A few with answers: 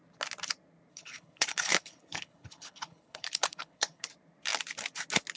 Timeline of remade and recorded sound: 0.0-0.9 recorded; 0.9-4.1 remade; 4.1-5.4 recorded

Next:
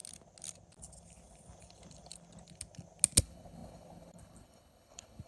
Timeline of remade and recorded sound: 0.0-3.2 recorded; 3.2-5.3 remade

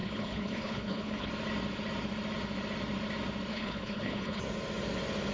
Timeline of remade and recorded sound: 0.0-1.3 remade; 1.3-3.5 recorded; 3.5-4.4 remade; 4.4-5.3 recorded

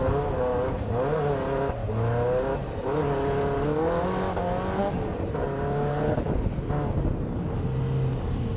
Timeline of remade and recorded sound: 0.0-5.9 recorded; 5.9-6.7 remade; 6.7-8.6 recorded